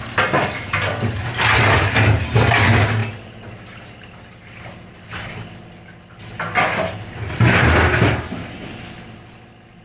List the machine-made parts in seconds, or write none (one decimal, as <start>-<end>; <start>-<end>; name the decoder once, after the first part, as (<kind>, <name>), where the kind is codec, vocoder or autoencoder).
none

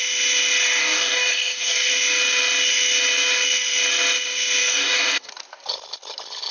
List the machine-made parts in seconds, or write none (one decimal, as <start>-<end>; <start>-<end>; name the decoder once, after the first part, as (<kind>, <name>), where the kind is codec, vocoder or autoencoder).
0.8-1.9 (codec, DAC); 4.6-5.3

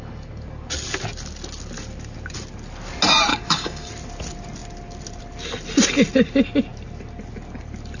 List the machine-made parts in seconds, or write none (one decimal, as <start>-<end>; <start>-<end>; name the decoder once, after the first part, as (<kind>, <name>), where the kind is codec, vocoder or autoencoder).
3.3-3.9 (codec, DAC)

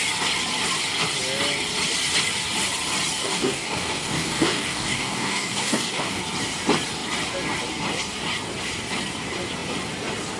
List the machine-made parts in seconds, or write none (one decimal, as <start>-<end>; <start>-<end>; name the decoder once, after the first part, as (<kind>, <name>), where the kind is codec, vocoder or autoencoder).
3.2-6.2 (codec, DAC)

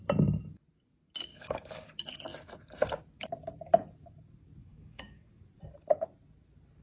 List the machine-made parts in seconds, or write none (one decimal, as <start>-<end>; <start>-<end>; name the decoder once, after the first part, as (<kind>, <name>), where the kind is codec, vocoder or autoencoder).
1.3-1.9 (codec, DAC); 4.6-5.3

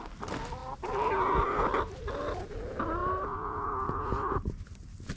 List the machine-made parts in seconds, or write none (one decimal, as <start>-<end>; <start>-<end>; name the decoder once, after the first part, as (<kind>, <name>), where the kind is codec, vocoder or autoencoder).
none

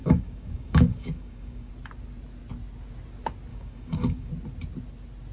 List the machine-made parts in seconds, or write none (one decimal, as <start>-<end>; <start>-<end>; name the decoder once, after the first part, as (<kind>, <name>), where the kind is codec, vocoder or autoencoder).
0.0-1.7 (codec, DAC); 3.5-4.3

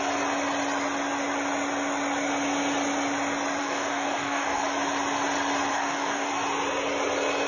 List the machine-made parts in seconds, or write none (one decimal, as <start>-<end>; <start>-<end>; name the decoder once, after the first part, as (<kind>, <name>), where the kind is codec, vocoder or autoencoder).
3.6-4.6 (codec, DAC); 5.7-6.3